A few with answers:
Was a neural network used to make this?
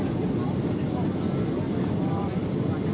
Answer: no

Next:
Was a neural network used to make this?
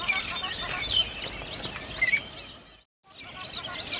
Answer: no